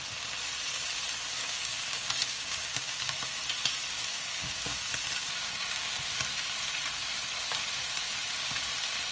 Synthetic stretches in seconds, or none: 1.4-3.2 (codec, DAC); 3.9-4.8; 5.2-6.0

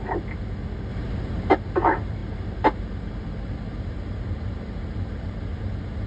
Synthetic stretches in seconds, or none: 0.9-1.5 (vocoder, BigVGAN v2); 2.2-6.1

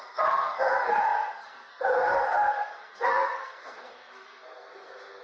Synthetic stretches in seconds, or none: 0.0-5.2 (codec, SNAC)

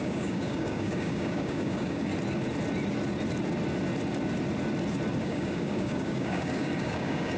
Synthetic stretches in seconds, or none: 0.0-2.1 (codec, DAC); 5.2-7.4

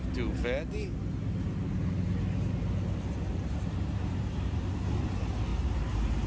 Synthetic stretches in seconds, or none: 3.3-4.7 (vocoder, BigVGAN v2); 5.5-6.3